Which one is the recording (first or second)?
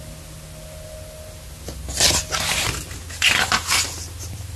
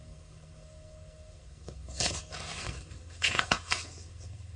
first